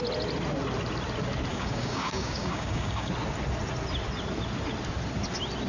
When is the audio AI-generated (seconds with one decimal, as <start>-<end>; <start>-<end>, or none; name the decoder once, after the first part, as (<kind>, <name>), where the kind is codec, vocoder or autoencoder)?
1.5-3.1 (codec, DAC)